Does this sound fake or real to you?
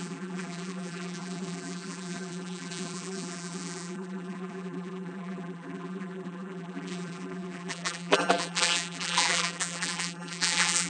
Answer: fake